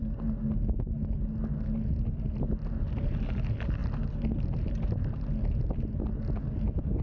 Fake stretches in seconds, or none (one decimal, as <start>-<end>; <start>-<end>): none